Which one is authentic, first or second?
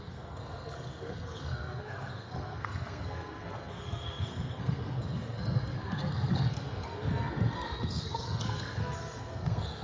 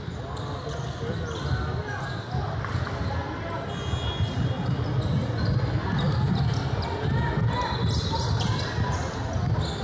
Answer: second